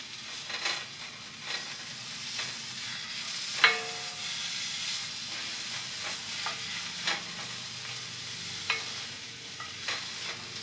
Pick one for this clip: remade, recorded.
recorded